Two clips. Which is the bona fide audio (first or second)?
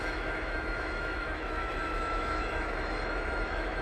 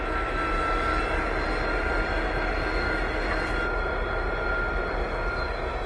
second